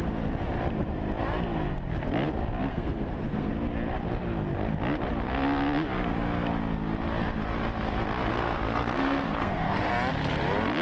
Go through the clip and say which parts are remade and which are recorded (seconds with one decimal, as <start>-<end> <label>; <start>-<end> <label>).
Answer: 0.0-2.7 recorded; 2.7-3.5 remade; 3.5-8.3 recorded; 8.3-9.9 remade; 9.9-10.8 recorded